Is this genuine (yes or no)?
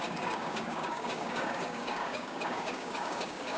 no